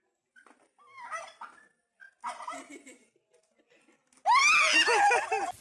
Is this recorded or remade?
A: recorded